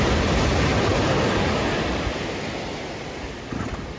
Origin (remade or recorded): recorded